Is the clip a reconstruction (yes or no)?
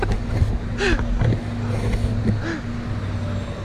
no